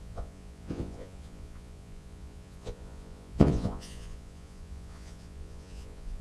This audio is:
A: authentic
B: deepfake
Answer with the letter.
B